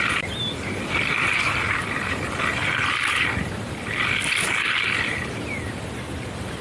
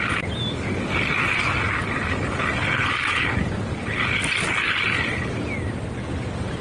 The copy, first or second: first